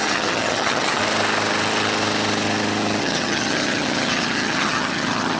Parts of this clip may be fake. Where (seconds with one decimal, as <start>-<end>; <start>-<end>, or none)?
0.0-1.0; 3.0-5.4